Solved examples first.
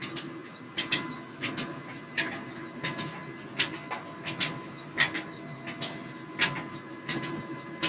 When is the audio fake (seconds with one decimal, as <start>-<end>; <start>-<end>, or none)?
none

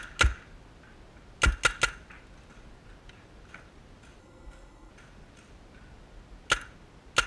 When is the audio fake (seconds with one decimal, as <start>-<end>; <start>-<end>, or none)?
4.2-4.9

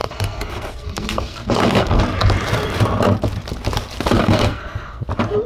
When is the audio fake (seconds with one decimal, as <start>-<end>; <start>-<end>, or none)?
0.0-2.0; 4.2-5.0

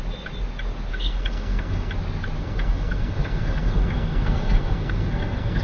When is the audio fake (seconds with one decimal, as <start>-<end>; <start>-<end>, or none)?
0.9-1.9; 2.4-5.6